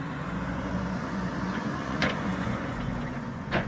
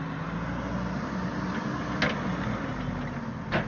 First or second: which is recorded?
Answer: second